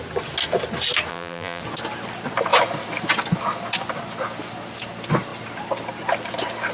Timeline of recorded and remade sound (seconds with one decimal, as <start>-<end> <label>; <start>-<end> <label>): 0.0-1.1 recorded; 1.1-1.6 remade; 1.6-6.7 recorded